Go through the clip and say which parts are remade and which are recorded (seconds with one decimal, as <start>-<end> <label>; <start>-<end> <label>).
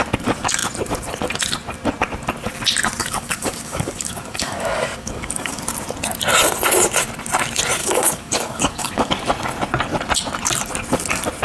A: 0.0-3.0 recorded; 3.0-5.6 remade; 5.6-7.8 recorded; 7.8-9.1 remade; 9.1-11.4 recorded